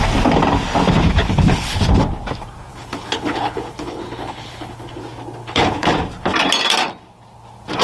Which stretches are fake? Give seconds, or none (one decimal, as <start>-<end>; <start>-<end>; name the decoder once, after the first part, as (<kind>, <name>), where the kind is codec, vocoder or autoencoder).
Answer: 1.2-1.8 (codec, HILCodec); 2.7-5.0; 5.4-5.9